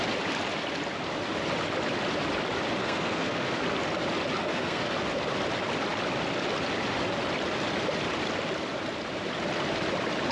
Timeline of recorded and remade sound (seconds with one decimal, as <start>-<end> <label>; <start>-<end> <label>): 0.0-2.8 recorded; 2.8-3.6 remade; 3.6-4.4 recorded; 4.4-4.9 remade; 4.9-10.3 recorded